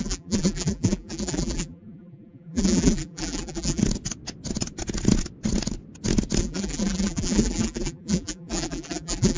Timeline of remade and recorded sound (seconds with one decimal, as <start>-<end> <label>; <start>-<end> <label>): 0.0-3.8 remade; 3.8-6.4 recorded; 6.4-9.4 remade